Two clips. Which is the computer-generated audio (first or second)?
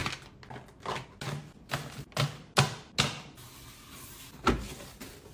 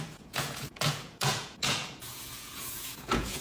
second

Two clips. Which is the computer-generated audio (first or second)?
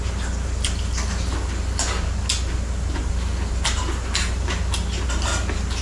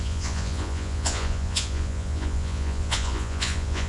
second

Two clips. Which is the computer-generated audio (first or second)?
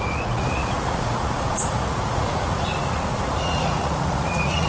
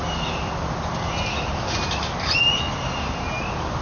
first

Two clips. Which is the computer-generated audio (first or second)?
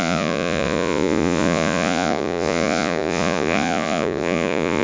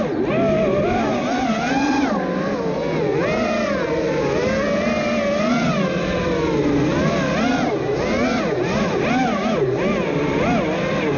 first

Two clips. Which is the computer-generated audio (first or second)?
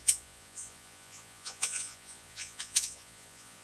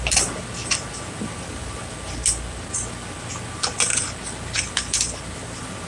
first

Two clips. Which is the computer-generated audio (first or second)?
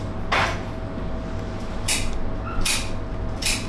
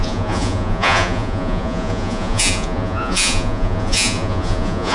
second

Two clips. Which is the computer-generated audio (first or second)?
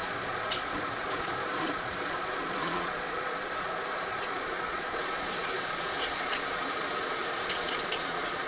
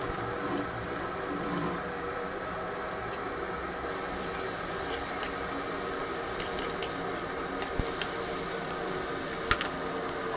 first